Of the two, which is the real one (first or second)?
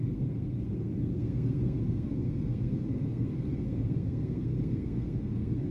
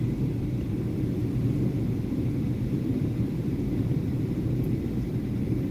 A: second